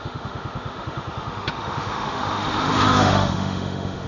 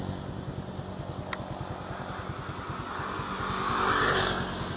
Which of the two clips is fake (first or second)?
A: first